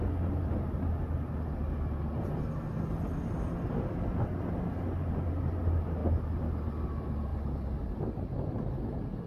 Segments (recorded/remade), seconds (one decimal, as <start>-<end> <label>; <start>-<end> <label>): 0.0-9.3 recorded